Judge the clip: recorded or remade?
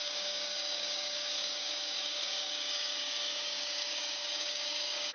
remade